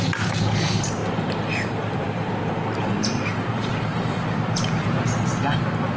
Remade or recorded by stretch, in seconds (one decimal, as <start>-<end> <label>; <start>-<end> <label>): 0.0-1.0 recorded; 1.0-2.4 remade; 2.4-3.0 recorded; 3.0-5.0 remade; 5.0-6.0 recorded